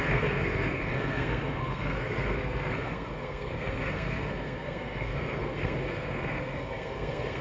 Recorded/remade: remade